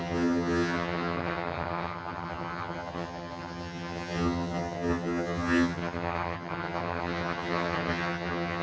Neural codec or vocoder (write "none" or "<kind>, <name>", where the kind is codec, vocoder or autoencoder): vocoder, HiFi-GAN